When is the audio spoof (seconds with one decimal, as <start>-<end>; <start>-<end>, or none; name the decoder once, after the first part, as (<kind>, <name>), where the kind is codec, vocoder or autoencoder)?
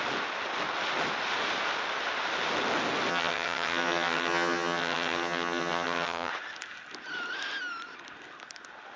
3.1-6.3 (vocoder, HiFi-GAN)